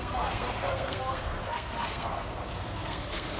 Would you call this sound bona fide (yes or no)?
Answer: no